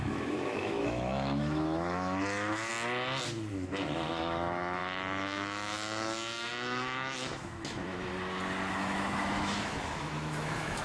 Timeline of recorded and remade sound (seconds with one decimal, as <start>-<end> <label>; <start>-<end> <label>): 0.0-2.7 remade; 2.7-3.5 recorded; 3.5-8.1 remade; 8.1-8.7 recorded; 8.7-10.8 remade